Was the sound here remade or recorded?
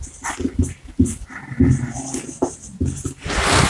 recorded